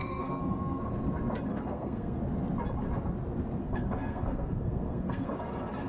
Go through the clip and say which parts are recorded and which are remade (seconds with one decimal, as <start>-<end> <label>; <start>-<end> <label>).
0.0-0.9 remade; 0.9-1.5 recorded; 1.5-2.2 remade; 2.2-3.6 recorded; 3.6-5.3 remade; 5.3-5.9 recorded